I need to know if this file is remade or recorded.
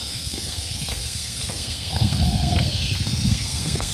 remade